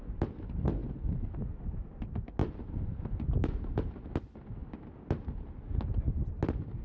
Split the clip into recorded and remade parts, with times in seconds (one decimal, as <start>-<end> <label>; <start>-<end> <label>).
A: 0.0-2.4 recorded; 2.4-3.2 remade; 3.2-6.8 recorded